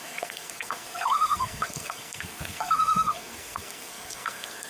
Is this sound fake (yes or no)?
yes